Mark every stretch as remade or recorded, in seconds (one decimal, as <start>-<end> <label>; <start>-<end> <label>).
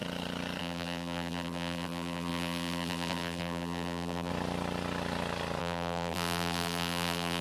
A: 0.0-0.6 recorded; 0.6-4.3 remade; 4.3-5.6 recorded; 5.6-7.4 remade